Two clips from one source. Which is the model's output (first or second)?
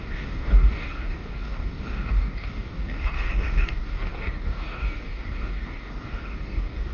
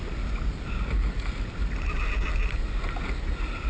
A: first